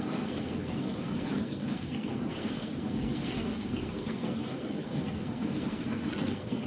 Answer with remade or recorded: remade